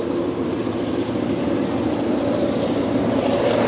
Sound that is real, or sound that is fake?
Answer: real